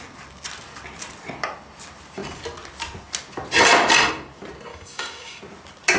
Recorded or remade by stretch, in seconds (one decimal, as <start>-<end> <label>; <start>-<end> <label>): 0.0-4.7 recorded; 4.7-5.4 remade; 5.4-6.0 recorded